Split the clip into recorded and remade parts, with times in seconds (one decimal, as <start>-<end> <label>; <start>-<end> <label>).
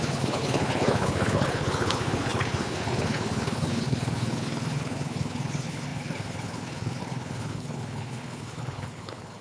0.0-9.4 remade